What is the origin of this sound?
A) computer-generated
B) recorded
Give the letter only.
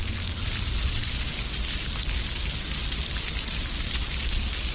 B